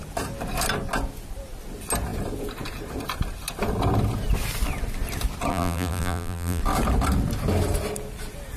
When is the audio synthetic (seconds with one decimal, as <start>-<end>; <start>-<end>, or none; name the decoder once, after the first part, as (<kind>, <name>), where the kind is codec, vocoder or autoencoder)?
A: 5.5-6.6 (vocoder, BigVGAN v2)